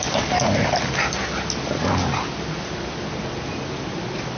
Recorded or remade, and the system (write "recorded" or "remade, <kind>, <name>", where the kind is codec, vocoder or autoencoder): recorded